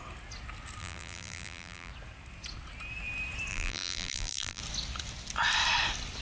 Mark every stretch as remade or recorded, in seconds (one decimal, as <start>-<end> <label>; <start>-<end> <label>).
0.0-0.8 recorded; 0.8-1.9 remade; 1.9-3.5 recorded; 3.5-4.6 remade; 4.6-6.2 recorded